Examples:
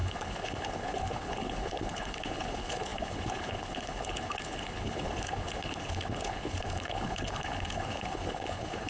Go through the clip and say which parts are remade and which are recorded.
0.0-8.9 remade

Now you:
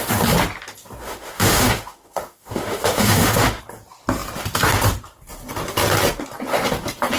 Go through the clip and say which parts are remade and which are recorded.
0.0-1.0 recorded; 1.0-3.6 remade; 3.6-7.2 recorded

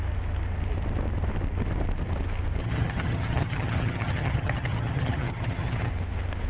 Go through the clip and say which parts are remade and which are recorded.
0.0-2.6 recorded; 2.6-5.9 remade; 5.9-6.5 recorded

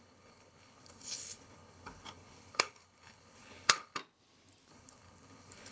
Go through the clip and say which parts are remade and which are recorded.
0.0-4.0 remade; 4.0-4.7 recorded; 4.7-5.7 remade

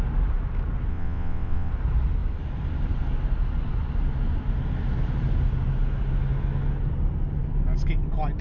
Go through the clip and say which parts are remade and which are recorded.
0.0-0.9 recorded; 0.9-1.7 remade; 1.7-8.4 recorded